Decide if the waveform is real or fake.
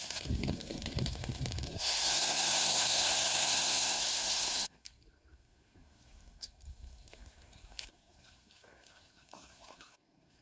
fake